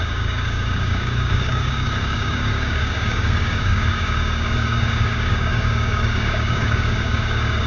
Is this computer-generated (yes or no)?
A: yes